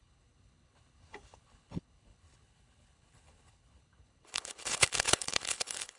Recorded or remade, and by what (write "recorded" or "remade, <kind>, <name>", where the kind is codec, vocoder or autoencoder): remade, codec, HILCodec